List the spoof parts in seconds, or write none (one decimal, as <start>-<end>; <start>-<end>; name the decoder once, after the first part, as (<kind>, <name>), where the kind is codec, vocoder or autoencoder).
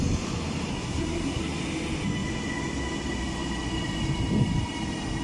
0.7-1.4 (codec, SNAC)